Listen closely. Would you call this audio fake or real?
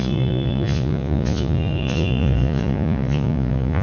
fake